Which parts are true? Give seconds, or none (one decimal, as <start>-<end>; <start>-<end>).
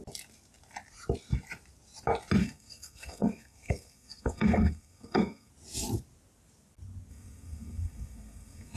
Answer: 0.0-2.4; 5.5-7.1